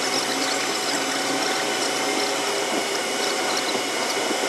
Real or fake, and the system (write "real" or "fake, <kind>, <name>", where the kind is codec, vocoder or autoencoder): real